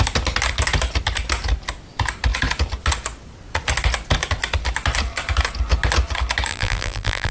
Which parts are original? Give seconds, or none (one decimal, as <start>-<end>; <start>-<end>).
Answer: 0.0-6.5